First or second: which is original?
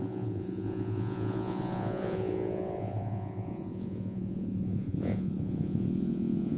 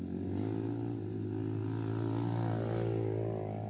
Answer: second